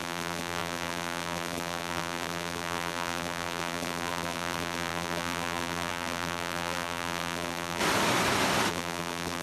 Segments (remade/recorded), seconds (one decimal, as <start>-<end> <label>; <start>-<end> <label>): 0.0-7.8 remade; 7.8-8.7 recorded; 8.7-9.4 remade